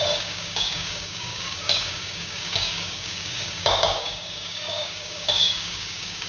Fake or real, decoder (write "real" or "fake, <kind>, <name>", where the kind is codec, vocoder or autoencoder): fake, codec, DAC